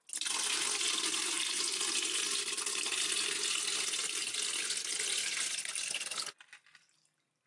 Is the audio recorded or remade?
recorded